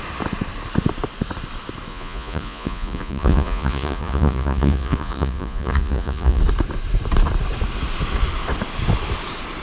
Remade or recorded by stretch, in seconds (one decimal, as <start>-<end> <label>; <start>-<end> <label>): 0.0-1.9 recorded; 1.9-6.4 remade; 6.4-9.6 recorded